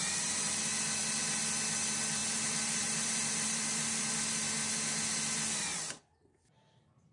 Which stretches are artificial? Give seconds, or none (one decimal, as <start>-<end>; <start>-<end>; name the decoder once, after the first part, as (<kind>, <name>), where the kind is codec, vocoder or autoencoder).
2.2-4.1 (vocoder, BigVGAN v2); 5.7-6.3